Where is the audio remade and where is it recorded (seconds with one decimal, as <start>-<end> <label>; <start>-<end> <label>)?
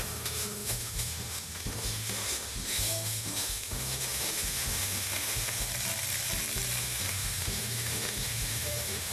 0.0-5.7 remade; 5.7-6.8 recorded; 6.8-9.1 remade